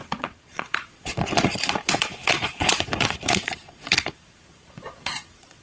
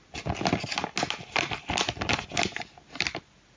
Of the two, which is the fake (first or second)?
first